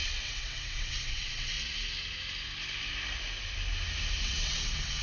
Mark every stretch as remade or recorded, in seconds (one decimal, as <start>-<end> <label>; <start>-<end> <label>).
0.0-1.5 remade; 1.5-4.2 recorded; 4.2-5.0 remade